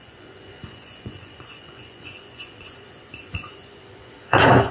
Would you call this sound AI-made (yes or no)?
yes